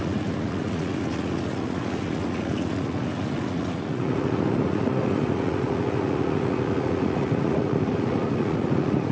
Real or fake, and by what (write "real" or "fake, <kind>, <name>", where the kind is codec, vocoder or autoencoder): fake, vocoder, Vocos